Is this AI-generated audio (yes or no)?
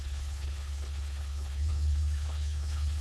yes